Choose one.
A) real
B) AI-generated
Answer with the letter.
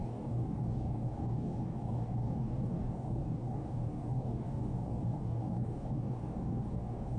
B